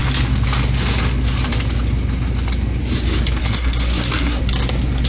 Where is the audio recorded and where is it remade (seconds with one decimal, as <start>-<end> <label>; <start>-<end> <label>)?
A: 0.0-3.4 recorded; 3.4-4.4 remade; 4.4-5.1 recorded